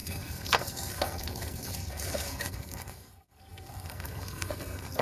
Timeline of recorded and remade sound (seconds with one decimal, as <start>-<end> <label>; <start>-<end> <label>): 0.0-5.0 remade